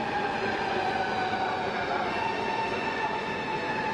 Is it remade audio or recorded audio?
remade